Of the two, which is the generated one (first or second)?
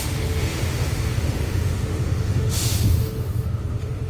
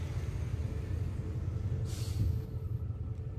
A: first